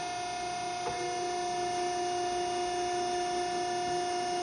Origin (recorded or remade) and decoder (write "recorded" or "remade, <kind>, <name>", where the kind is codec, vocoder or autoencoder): recorded